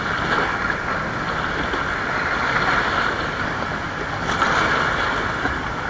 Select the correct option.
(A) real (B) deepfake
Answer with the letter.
A